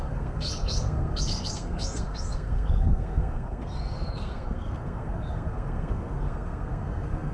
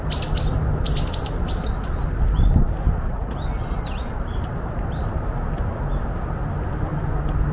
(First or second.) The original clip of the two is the second